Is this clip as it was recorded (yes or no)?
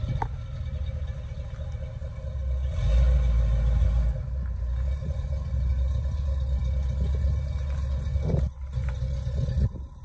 yes